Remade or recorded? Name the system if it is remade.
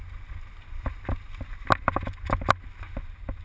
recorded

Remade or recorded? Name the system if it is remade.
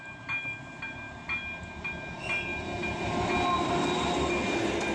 recorded